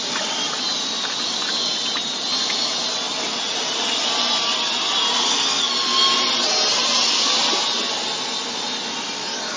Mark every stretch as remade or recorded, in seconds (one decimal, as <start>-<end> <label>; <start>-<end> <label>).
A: 0.0-9.6 recorded